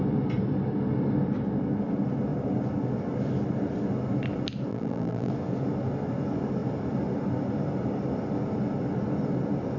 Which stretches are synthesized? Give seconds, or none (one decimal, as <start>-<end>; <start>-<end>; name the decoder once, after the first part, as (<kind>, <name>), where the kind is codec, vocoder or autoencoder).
4.7-5.3 (vocoder, BigVGAN v2)